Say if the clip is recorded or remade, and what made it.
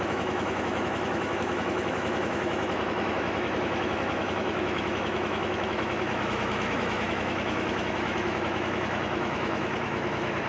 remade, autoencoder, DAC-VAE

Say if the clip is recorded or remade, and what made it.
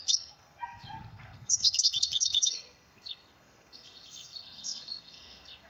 remade, codec, SNAC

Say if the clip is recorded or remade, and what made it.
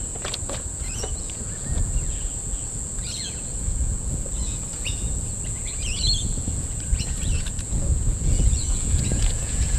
remade, vocoder, Vocos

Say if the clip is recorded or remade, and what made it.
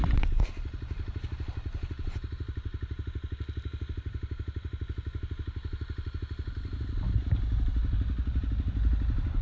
recorded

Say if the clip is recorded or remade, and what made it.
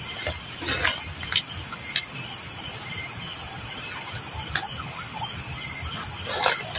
recorded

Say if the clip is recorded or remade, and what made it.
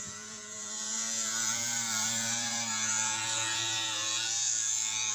remade, vocoder, Vocos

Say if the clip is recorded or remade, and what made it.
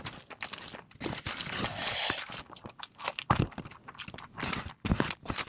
recorded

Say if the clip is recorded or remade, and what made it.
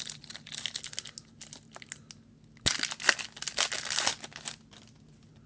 recorded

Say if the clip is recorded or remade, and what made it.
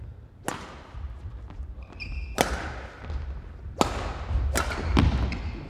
recorded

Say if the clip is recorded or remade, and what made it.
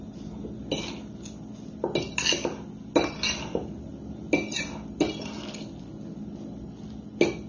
recorded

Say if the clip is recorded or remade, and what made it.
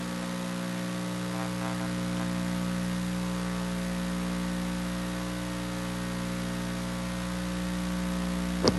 recorded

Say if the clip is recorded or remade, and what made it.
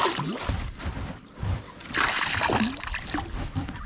recorded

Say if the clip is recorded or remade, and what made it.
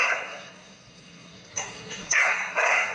remade, codec, SNAC